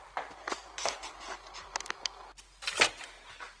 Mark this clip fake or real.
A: real